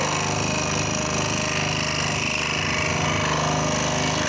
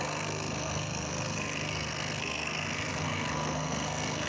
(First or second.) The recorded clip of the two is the first